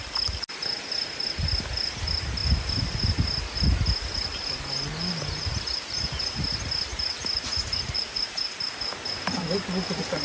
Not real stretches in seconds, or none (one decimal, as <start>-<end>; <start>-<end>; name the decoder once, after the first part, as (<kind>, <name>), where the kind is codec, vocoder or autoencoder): 6.9-8.5 (vocoder, Vocos)